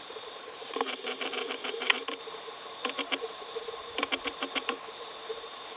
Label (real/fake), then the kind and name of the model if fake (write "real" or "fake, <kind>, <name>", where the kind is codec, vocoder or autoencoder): fake, vocoder, BigVGAN v2